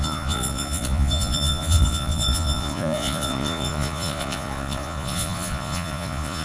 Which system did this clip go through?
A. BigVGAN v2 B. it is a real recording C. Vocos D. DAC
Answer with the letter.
C